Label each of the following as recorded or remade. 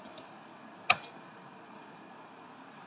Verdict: remade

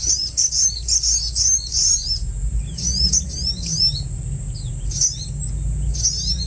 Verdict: recorded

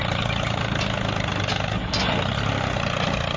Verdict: recorded